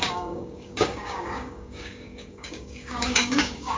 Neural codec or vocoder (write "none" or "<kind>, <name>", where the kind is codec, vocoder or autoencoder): codec, DAC